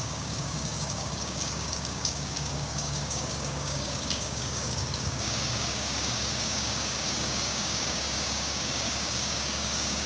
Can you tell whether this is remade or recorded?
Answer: remade